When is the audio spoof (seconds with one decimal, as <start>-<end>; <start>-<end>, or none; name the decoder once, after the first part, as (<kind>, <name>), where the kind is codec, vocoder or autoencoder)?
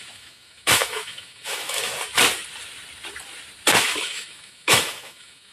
0.0-1.9 (autoencoder, DAC-VAE); 3.8-5.5